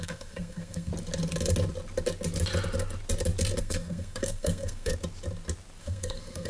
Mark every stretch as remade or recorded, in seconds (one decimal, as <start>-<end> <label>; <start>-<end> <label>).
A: 0.0-0.9 remade; 0.9-3.6 recorded; 3.6-4.9 remade; 4.9-5.8 recorded; 5.8-6.5 remade